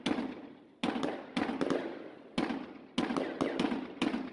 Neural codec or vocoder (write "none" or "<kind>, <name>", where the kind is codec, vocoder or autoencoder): none